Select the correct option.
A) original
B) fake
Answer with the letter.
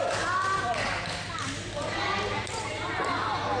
A